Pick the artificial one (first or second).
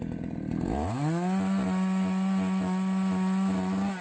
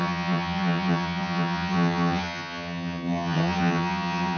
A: second